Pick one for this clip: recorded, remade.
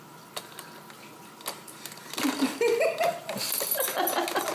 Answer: recorded